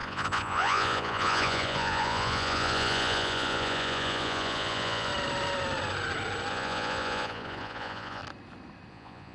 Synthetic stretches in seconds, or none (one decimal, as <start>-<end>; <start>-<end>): 0.0-5.1; 6.5-8.2; 8.9-9.3